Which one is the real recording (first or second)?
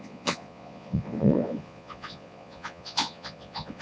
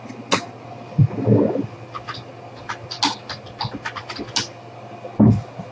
second